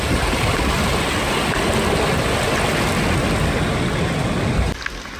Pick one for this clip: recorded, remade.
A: recorded